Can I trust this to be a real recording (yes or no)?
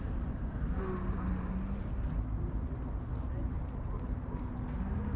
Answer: yes